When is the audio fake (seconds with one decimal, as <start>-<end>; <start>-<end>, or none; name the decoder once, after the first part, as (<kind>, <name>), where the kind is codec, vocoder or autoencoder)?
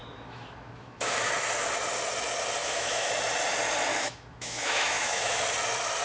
0.0-1.3 (autoencoder, DAC-VAE); 2.6-3.1; 3.9-5.4